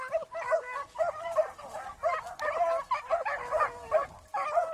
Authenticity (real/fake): real